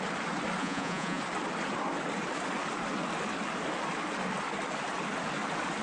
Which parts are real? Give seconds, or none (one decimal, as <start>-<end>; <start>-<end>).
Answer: 0.0-0.6; 1.2-5.8